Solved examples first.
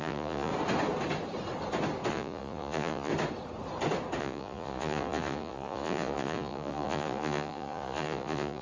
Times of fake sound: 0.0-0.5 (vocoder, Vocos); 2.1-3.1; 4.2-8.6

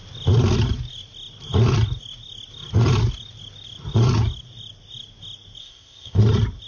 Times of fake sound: 5.6-6.2 (codec, ZipCodec)

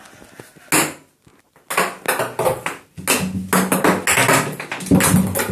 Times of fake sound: none

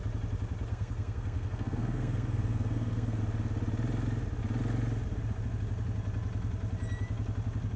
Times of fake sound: 0.7-3.2 (codec, SNAC)

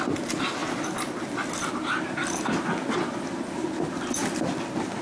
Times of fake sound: none